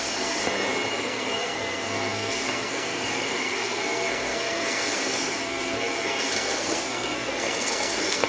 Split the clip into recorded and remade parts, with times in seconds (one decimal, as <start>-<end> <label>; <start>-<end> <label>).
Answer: 0.0-0.4 remade; 0.4-0.9 recorded; 0.9-8.3 remade